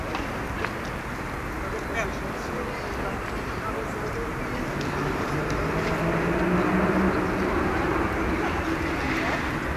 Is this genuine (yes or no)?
yes